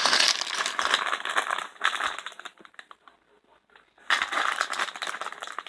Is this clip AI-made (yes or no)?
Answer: no